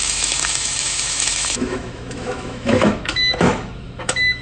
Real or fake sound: fake